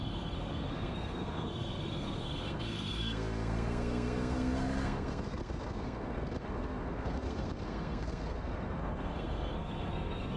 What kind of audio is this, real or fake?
fake